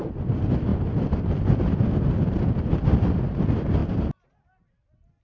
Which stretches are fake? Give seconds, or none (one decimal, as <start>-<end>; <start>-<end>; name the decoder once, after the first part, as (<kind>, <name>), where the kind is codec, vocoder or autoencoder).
none